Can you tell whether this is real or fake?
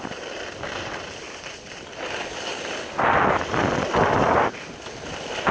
real